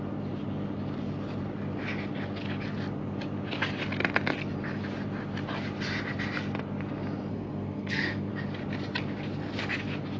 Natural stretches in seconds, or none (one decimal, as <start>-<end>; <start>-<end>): 0.0-7.3; 8.3-10.2